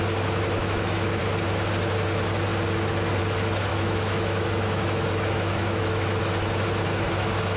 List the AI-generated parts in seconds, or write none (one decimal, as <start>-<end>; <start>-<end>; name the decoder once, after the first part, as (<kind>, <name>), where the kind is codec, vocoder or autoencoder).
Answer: 0.6-1.2 (autoencoder, DAC-VAE); 3.7-6.2